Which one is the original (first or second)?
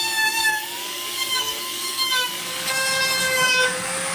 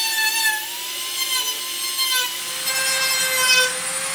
second